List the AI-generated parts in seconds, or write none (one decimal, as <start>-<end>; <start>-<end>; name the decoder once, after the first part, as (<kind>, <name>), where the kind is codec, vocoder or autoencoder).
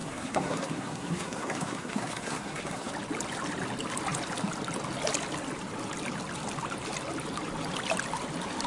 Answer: 0.0-2.9 (codec, SNAC)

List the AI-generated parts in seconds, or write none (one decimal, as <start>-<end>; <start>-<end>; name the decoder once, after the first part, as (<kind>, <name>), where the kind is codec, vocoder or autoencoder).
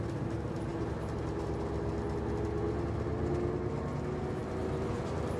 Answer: none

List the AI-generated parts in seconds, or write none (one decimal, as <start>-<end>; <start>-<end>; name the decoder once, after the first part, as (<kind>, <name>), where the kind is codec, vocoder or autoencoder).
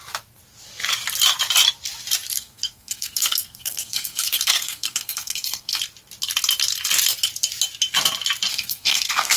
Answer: 2.3-5.8 (codec, SNAC); 8.5-9.4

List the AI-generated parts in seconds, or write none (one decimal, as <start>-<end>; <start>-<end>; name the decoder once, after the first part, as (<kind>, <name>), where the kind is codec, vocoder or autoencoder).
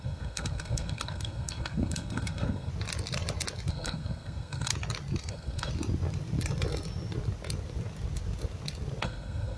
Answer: 0.0-2.7 (codec, SNAC); 3.7-4.7; 5.3-5.7; 9.0-9.6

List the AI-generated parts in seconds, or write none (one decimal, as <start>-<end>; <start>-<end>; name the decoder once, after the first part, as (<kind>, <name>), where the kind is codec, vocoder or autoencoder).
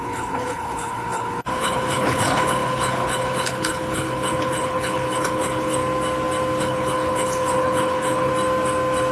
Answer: 0.0-5.8 (codec, HILCodec); 6.6-8.3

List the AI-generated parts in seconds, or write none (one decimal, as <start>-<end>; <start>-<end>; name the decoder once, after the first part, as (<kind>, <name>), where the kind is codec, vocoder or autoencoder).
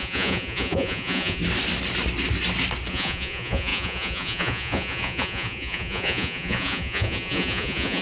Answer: 0.0-1.4 (vocoder, Vocos); 2.9-8.0